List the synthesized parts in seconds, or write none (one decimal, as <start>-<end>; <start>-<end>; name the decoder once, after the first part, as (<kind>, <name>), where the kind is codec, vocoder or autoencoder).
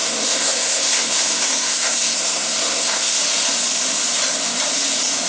0.0-3.2 (codec, SNAC)